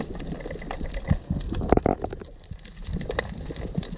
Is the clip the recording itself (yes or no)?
yes